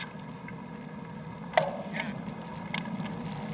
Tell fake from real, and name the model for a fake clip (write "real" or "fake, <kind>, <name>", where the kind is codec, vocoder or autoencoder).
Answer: real